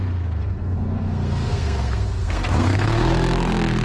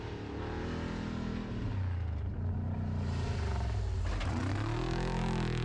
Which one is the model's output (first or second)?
first